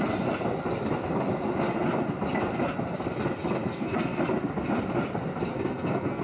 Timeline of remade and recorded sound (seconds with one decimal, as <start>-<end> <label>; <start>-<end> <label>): 0.0-3.7 recorded; 3.7-4.2 remade; 4.2-5.5 recorded; 5.5-6.2 remade